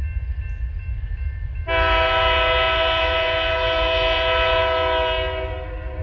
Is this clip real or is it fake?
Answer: real